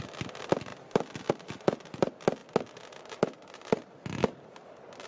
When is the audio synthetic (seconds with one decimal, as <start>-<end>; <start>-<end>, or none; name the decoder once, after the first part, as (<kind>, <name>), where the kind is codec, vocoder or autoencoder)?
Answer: none